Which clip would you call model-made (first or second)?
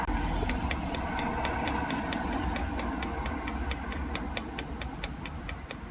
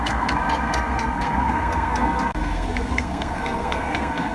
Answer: second